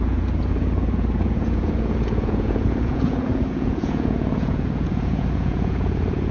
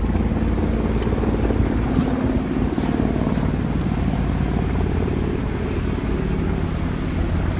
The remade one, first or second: first